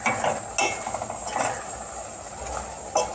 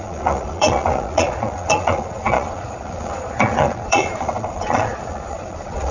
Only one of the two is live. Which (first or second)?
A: first